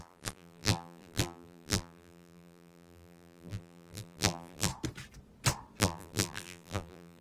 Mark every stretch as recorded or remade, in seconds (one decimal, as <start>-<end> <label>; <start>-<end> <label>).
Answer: 0.0-4.7 remade; 4.7-5.8 recorded; 5.8-7.2 remade

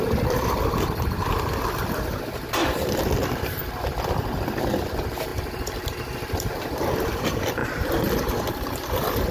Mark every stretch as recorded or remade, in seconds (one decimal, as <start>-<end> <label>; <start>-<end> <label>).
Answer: 0.0-7.6 remade; 7.6-8.5 recorded; 8.5-9.3 remade

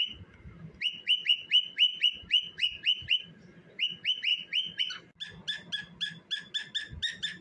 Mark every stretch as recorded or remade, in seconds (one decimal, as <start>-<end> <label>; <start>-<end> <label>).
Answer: 0.0-1.9 recorded; 1.9-3.2 remade; 3.2-4.3 recorded; 4.3-4.8 remade; 4.8-7.4 recorded

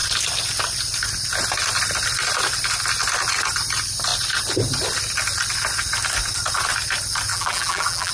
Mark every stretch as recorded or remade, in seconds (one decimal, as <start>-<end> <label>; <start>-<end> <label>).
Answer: 0.0-7.3 recorded; 7.3-8.1 remade

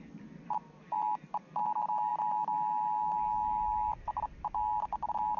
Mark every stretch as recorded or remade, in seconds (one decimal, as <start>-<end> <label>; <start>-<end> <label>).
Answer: 0.0-5.4 recorded

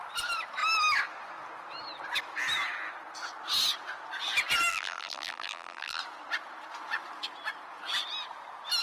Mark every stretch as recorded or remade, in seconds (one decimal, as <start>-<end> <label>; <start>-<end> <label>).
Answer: 0.0-4.7 recorded; 4.7-6.0 remade; 6.0-8.8 recorded